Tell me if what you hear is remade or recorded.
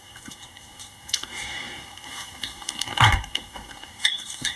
remade